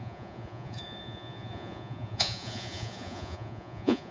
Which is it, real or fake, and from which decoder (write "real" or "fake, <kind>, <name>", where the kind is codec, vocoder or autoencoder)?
fake, vocoder, Vocos